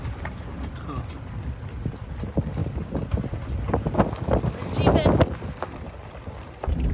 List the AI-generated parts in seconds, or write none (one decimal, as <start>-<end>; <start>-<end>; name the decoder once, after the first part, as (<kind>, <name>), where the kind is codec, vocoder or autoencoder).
none